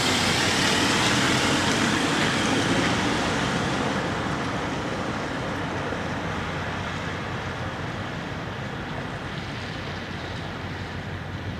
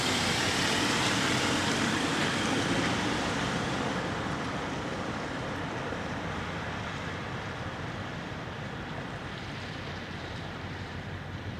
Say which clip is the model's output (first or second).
second